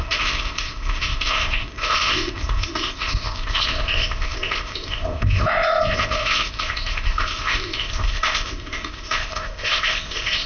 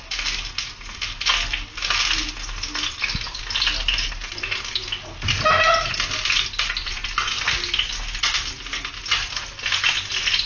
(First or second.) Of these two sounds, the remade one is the first